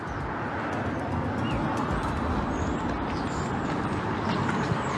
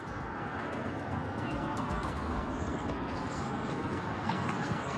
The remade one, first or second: second